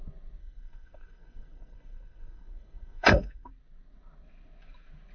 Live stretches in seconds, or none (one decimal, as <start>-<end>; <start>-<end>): 0.0-0.4; 3.5-5.1